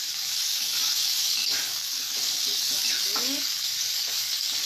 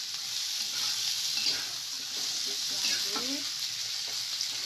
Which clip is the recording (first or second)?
second